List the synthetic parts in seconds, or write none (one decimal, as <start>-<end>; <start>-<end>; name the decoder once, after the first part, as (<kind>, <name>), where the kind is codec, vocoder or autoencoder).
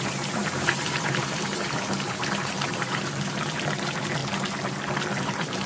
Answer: 0.0-4.2 (vocoder, BigVGAN v2); 5.2-5.7